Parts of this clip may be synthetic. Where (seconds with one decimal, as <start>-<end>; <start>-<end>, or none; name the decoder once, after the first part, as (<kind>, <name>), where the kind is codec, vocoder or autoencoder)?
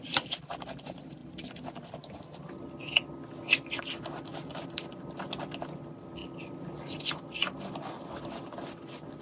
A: none